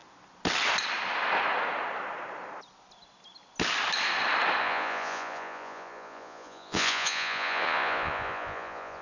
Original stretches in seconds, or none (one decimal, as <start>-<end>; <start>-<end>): 0.0-4.6